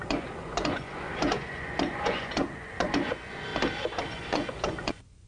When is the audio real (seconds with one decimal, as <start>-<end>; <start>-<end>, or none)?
3.5-4.1